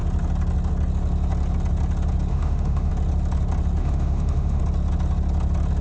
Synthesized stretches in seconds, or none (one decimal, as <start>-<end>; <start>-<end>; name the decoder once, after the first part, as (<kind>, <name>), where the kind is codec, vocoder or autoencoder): 2.3-2.9 (autoencoder, DAC-VAE); 3.8-4.6